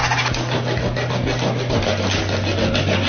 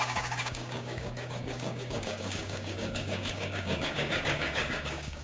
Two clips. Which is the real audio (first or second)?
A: first